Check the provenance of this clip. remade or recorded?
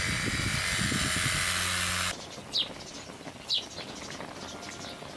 recorded